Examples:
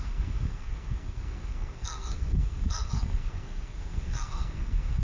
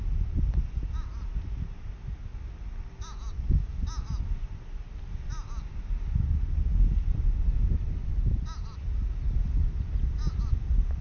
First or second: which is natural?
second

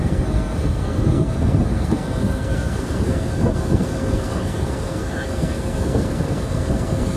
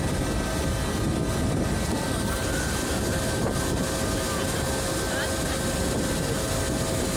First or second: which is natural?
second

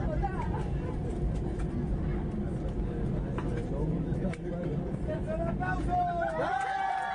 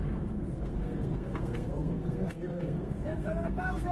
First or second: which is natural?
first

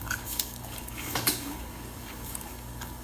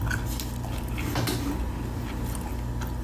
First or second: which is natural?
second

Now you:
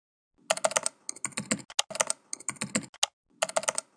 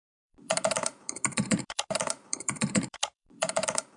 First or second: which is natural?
first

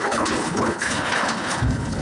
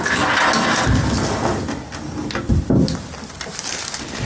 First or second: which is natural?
second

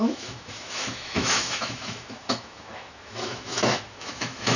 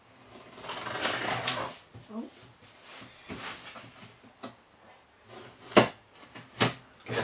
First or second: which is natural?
second